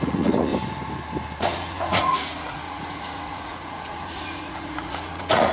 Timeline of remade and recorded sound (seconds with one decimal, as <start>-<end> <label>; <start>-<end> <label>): 0.0-0.5 remade; 0.5-1.4 recorded; 1.4-5.5 remade